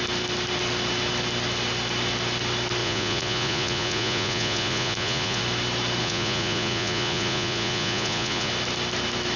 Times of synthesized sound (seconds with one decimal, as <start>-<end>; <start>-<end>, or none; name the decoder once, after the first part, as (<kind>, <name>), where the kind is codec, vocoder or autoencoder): 2.8-5.4 (vocoder, Vocos); 6.0-8.5